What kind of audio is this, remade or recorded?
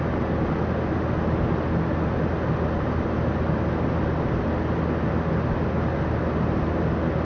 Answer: recorded